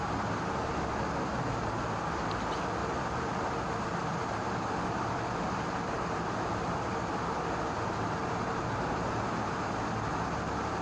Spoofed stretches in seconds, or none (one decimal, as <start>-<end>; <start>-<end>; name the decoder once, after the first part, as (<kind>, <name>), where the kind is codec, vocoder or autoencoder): 2.8-3.6 (vocoder, BigVGAN v2); 8.2-8.9